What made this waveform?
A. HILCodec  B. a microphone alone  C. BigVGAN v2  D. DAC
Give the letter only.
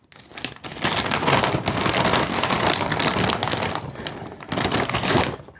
B